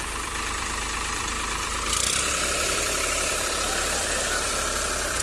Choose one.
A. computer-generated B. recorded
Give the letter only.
A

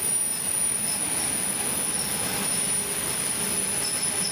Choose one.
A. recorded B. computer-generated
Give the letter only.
A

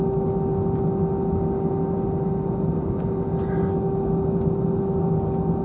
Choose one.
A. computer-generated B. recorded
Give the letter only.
B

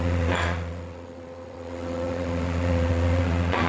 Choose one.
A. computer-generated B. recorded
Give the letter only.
A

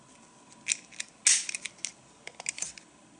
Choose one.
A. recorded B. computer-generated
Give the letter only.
A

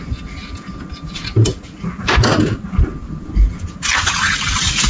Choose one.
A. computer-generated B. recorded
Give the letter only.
B